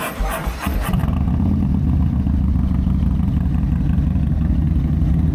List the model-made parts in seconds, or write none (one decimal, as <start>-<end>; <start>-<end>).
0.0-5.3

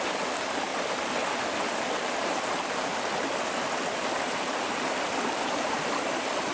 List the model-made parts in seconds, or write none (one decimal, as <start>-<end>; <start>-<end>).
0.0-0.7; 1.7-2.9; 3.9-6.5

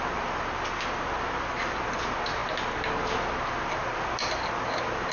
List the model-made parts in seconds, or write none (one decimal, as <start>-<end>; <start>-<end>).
none

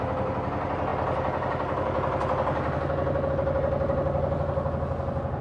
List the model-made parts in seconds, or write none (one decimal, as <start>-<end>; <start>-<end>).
none

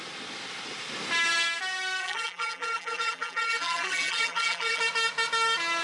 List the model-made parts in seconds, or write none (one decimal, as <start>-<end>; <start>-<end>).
2.0-4.8

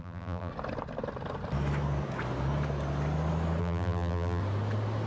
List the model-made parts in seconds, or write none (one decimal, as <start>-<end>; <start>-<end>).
0.0-0.5; 3.6-4.4